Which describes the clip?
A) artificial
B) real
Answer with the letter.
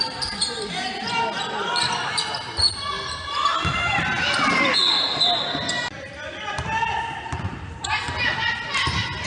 B